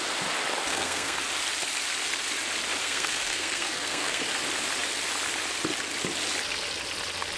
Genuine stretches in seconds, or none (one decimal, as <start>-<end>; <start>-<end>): 0.0-0.7; 1.2-2.8; 4.2-7.4